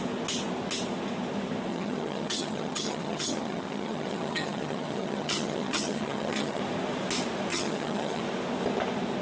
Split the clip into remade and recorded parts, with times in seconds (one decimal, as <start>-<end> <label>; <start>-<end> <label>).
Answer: 0.0-1.7 recorded; 1.7-6.6 remade; 6.6-7.5 recorded; 7.5-8.2 remade; 8.2-9.2 recorded